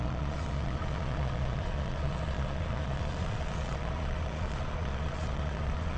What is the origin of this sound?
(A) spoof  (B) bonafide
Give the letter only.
A